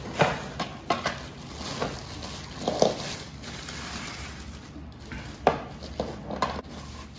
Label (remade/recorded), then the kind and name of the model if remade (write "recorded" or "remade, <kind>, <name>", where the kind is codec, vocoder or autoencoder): recorded